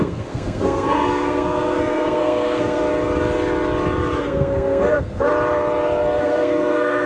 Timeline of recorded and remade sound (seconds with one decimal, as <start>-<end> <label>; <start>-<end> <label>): 0.0-2.8 remade; 2.8-4.2 recorded; 4.2-5.3 remade; 5.3-6.2 recorded; 6.2-7.1 remade